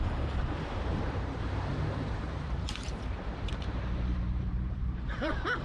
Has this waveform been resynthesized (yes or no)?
yes